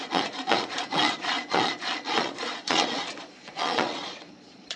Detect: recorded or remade remade